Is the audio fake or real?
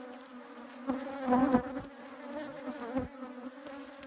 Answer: real